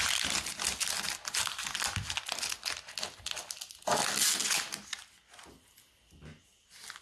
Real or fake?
real